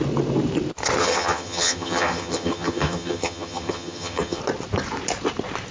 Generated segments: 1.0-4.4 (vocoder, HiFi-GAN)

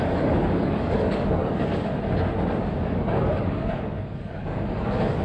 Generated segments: 0.0-1.7 (codec, DAC); 2.8-5.2

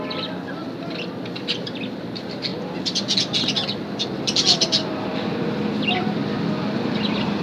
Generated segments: none

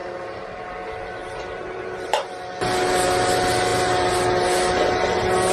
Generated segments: 0.0-0.7 (vocoder, BigVGAN v2); 1.2-2.3

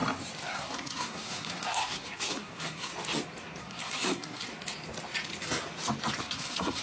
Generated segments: 0.5-2.9 (codec, SNAC); 3.6-4.5; 6.2-6.8